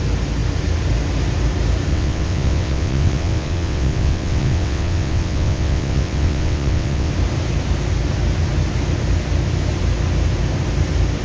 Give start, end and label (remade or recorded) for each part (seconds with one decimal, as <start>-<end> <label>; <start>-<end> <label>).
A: 0.0-1.9 recorded; 1.9-7.1 remade; 7.1-11.2 recorded